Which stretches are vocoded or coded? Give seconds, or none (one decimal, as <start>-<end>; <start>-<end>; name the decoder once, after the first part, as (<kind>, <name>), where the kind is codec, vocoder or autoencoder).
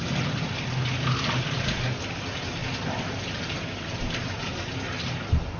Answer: none